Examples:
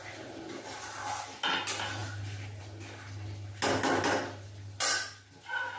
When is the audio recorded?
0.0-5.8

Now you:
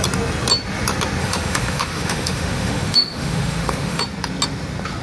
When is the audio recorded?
0.0-1.2; 4.0-5.0

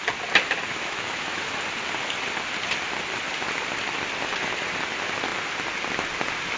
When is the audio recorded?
0.0-0.7; 1.5-6.6

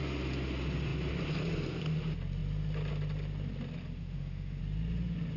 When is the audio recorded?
0.0-4.0; 4.6-5.4